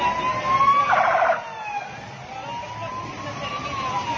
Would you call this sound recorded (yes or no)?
yes